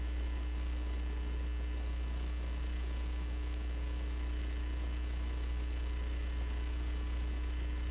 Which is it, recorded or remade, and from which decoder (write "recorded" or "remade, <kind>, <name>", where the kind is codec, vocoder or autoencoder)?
recorded